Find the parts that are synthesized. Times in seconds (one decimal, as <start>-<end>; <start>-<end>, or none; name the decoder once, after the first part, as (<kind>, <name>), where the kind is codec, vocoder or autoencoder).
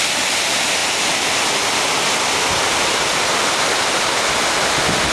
none